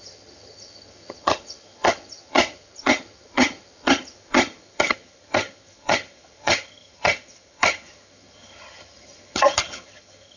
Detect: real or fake fake